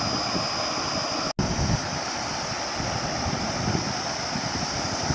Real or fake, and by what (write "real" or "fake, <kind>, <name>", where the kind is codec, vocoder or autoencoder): real